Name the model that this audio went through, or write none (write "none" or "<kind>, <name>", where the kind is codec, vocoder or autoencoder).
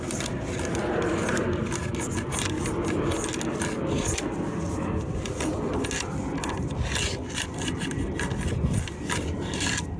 none